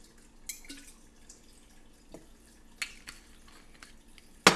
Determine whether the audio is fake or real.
real